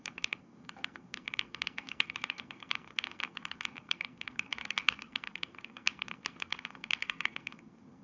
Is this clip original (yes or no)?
no